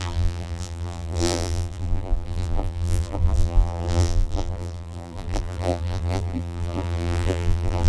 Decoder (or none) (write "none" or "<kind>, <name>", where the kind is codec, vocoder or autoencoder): vocoder, BigVGAN v2